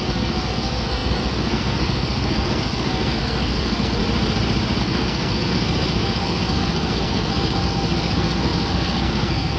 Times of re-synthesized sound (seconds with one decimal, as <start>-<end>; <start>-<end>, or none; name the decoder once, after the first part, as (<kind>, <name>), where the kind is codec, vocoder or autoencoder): 0.0-4.0 (codec, SNAC); 4.8-9.6